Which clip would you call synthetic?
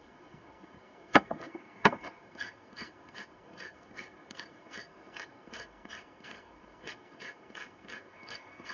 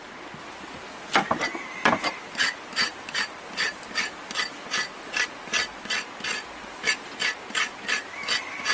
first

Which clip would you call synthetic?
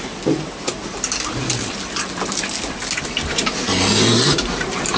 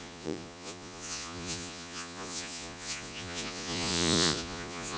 second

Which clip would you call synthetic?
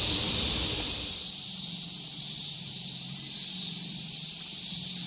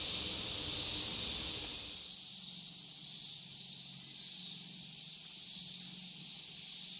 first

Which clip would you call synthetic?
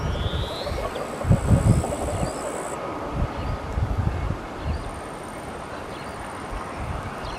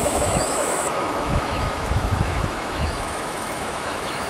second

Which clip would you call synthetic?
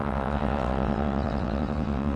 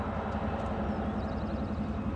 first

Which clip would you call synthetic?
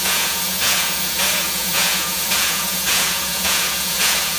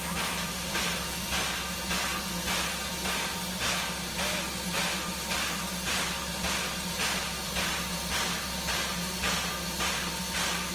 first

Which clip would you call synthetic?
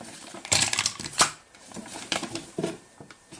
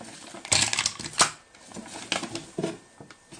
first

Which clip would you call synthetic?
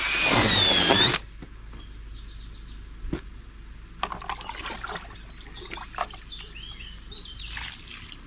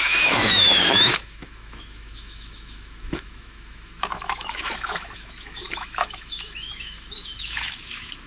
second